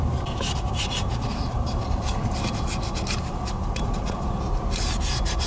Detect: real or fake real